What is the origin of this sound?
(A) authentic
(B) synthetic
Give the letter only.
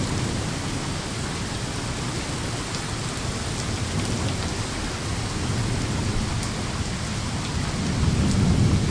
A